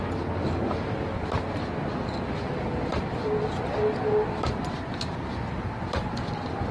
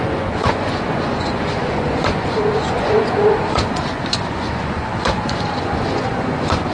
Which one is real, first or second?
first